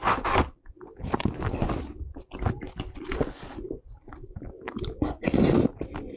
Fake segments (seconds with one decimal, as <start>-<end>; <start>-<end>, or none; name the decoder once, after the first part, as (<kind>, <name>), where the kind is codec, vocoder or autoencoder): none